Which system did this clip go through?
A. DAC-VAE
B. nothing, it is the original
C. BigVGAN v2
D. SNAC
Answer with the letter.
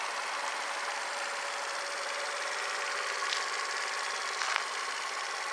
B